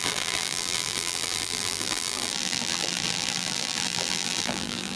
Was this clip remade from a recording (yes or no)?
yes